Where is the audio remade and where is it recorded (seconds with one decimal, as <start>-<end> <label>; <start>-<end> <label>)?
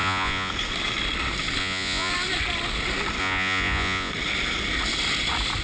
0.0-0.5 remade; 0.5-1.6 recorded; 1.6-2.1 remade; 2.1-3.2 recorded; 3.2-4.1 remade; 4.1-5.6 recorded